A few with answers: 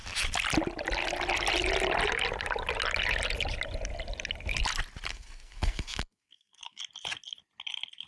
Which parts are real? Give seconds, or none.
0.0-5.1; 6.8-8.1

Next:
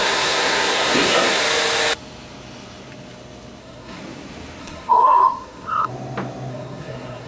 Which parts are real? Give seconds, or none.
1.4-3.6; 4.0-4.6; 5.9-6.5

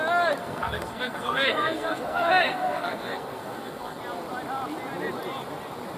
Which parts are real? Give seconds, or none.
0.0-0.4; 4.0-6.0

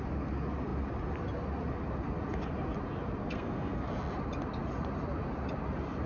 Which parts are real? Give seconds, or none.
0.0-3.2; 3.9-6.1

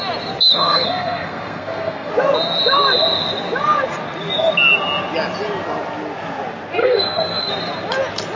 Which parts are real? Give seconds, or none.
0.0-0.5; 2.1-6.8; 7.5-8.4

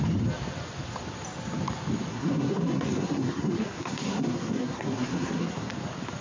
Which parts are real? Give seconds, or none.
0.0-2.1; 5.7-6.2

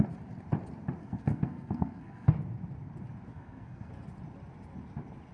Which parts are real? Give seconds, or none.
0.0-1.0; 2.3-3.3; 3.9-5.3